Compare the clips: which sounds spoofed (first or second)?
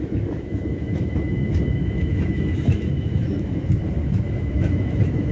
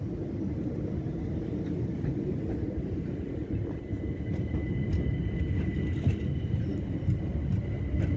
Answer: first